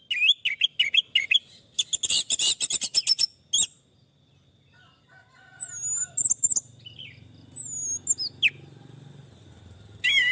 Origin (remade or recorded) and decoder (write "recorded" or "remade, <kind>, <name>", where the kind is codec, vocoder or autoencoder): recorded